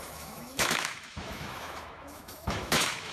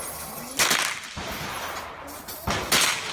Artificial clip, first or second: first